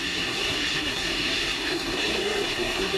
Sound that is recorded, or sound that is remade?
remade